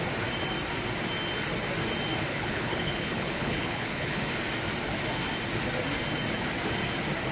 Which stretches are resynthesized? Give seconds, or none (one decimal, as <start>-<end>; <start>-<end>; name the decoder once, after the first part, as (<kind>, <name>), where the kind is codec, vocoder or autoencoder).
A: 2.3-4.4 (codec, HILCodec)